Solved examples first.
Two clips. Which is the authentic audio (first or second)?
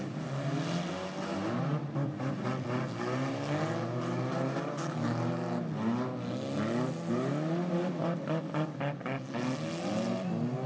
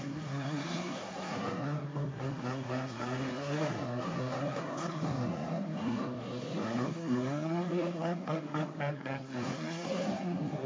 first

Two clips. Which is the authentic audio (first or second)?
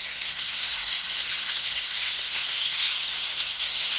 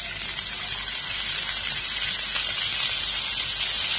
second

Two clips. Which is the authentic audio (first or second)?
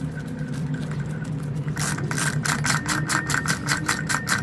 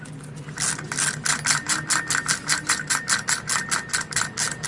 second